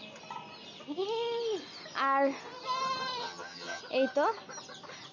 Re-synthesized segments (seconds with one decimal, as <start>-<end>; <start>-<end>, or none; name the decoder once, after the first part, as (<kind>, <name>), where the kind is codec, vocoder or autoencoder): 3.2-3.8 (vocoder, HiFi-GAN)